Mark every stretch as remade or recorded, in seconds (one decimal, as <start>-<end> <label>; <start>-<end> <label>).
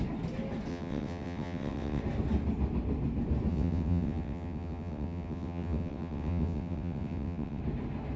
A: 0.0-0.7 recorded; 0.7-2.0 remade; 2.0-3.5 recorded; 3.5-7.6 remade; 7.6-8.2 recorded